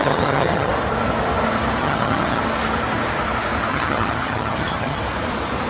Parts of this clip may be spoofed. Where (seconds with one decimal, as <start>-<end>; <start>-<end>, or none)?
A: 0.0-0.7; 1.8-2.4; 3.7-5.0